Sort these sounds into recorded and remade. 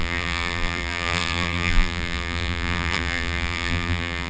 remade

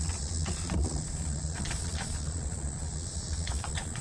remade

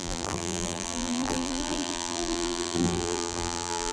remade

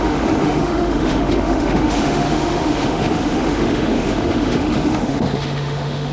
remade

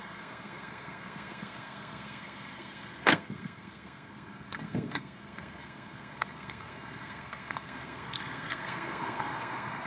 remade